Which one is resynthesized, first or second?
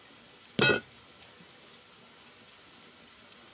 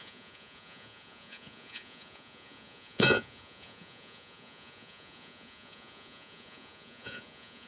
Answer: second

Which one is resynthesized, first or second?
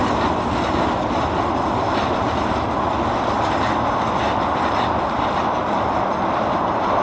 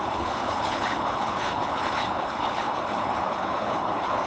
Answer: second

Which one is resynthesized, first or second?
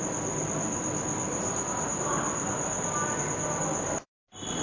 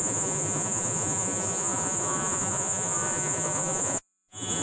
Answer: second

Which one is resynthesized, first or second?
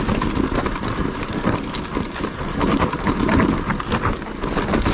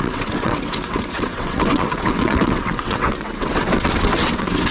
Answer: second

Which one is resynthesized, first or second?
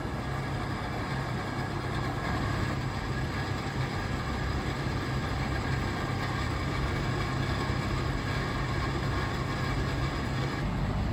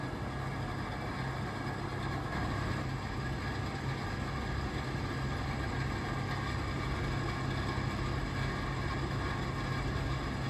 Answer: first